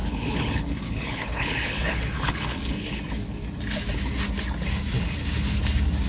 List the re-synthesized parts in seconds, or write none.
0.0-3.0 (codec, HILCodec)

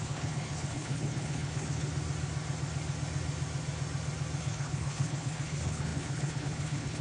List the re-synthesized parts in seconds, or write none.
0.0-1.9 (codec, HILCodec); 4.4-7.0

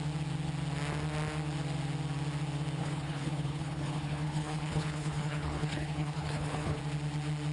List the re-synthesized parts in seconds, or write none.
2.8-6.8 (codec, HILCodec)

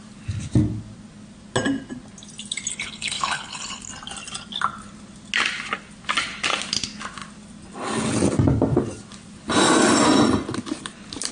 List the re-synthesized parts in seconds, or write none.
2.7-3.9 (codec, HILCodec)

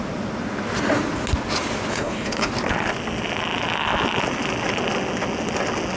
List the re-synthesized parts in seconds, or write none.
1.9-2.5 (codec, HILCodec)